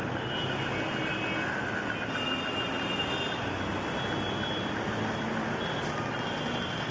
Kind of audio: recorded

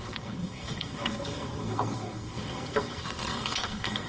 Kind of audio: remade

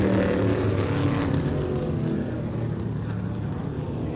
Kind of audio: recorded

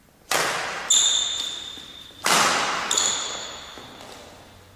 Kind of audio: recorded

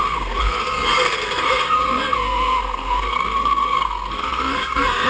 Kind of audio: remade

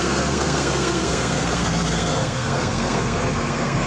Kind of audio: remade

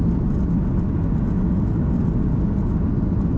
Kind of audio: recorded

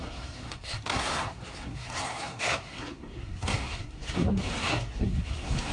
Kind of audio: remade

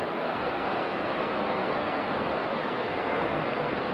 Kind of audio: remade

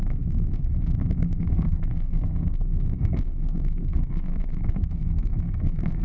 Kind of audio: remade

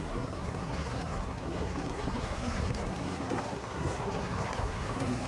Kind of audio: remade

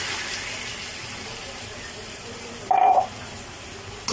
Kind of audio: recorded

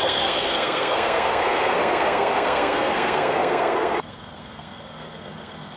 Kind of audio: remade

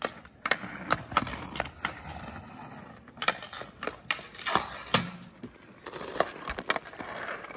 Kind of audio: recorded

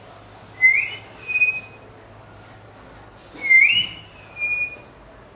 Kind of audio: recorded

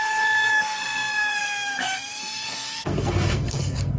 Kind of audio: remade